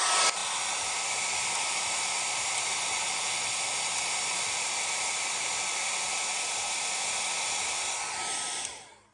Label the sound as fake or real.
real